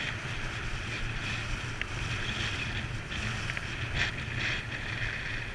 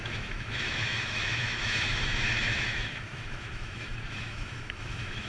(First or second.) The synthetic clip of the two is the second